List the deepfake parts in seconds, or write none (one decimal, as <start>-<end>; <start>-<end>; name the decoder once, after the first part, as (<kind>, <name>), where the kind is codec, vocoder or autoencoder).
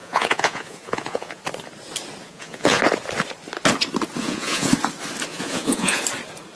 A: 0.0-1.4 (vocoder, Vocos); 2.2-2.8; 4.2-4.7; 5.3-6.0